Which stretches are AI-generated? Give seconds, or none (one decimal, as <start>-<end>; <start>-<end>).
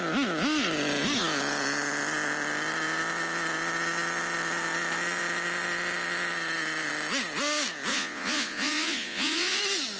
7.9-9.6